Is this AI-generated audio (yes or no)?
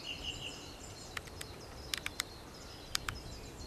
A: no